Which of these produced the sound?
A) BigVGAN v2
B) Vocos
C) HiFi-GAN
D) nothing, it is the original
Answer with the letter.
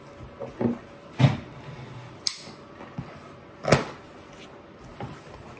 D